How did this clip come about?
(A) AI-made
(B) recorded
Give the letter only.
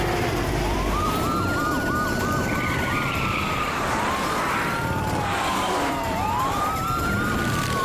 A